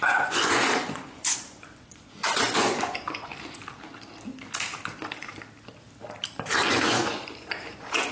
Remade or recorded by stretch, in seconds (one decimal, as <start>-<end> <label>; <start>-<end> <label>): 0.0-3.3 remade; 3.3-6.7 recorded; 6.7-8.1 remade